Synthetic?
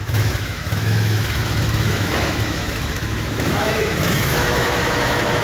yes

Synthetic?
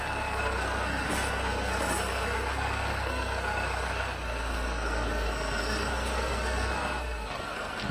yes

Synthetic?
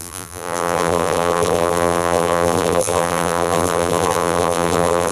yes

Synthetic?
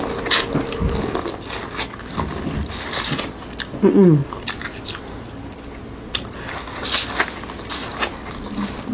no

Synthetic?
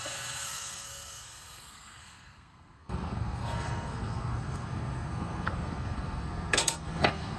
yes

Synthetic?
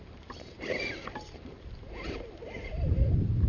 yes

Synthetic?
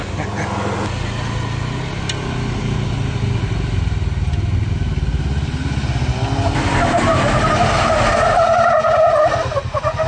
no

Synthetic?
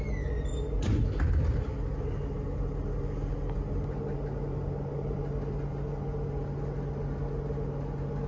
no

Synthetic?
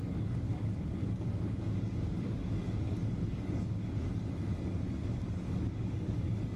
yes